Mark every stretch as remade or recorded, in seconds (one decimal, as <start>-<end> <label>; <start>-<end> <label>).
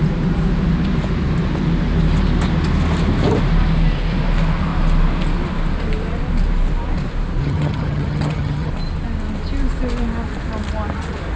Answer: 0.0-7.4 recorded; 7.4-8.7 remade; 8.7-11.4 recorded